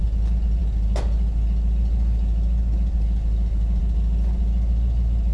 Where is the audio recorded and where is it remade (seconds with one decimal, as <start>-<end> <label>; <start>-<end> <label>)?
0.0-5.3 recorded